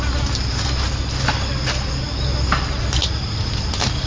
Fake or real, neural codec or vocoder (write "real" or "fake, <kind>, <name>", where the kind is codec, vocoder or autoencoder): real